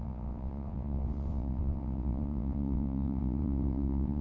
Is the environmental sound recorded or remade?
remade